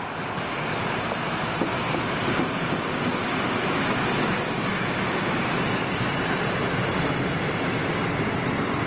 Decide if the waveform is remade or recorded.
recorded